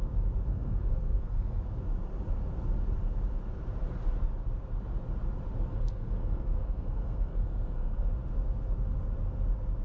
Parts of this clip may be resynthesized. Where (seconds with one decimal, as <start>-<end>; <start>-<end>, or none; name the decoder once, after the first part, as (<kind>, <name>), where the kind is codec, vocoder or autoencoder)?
0.5-1.6 (codec, SNAC); 5.7-8.1